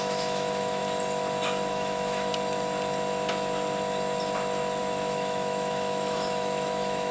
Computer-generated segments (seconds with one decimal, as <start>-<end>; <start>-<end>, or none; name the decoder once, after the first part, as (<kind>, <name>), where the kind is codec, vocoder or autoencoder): 0.0-0.8 (autoencoder, DAC-VAE); 1.7-2.3; 4.8-7.1